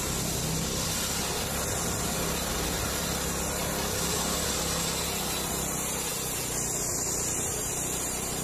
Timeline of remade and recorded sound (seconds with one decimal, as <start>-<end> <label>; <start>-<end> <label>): 0.0-8.4 recorded